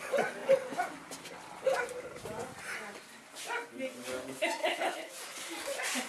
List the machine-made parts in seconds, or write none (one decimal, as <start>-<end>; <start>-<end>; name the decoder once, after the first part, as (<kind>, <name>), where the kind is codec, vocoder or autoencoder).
4.6-5.1 (codec, HILCodec)

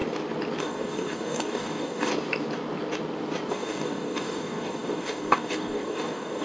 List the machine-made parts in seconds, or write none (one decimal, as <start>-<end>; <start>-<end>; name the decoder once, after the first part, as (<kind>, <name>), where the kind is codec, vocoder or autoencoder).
0.6-2.1 (codec, DAC); 3.5-6.4

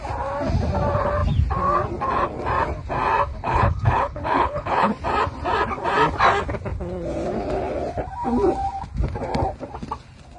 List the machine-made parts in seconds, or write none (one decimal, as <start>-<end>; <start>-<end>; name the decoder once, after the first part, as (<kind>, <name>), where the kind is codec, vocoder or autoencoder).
3.3-4.9 (codec, HILCodec)

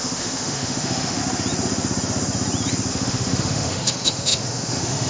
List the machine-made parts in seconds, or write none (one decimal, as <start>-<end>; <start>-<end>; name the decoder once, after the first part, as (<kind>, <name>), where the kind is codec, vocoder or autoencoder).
0.0-1.2 (autoencoder, DAC-VAE); 2.9-5.1

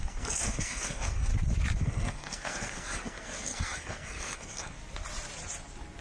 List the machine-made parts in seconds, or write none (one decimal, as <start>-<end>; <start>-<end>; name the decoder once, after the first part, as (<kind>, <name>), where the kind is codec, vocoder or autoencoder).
0.0-1.3 (codec, SNAC); 1.8-4.8

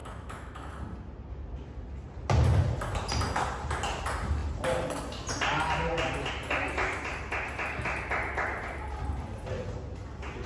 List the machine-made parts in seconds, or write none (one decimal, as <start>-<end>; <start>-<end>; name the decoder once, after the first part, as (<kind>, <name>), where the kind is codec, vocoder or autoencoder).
0.0-0.7 (autoencoder, DAC-VAE)

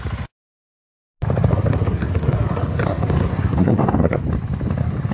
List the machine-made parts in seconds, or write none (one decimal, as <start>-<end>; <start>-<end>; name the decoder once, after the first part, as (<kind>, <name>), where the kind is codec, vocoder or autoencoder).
1.5-4.2 (codec, SNAC)